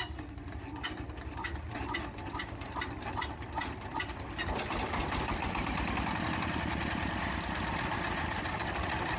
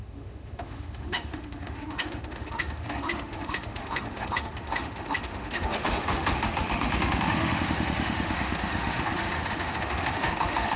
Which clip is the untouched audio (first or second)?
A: first